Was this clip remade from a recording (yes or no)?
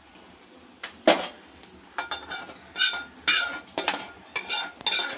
no